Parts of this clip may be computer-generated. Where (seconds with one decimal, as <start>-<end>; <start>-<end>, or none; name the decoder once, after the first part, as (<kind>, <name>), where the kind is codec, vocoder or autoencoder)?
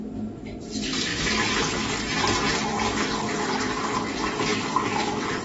none